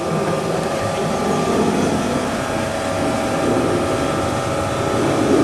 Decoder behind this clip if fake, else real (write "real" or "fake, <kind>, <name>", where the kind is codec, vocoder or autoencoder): real